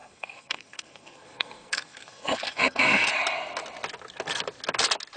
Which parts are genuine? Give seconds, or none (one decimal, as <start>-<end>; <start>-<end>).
3.1-5.2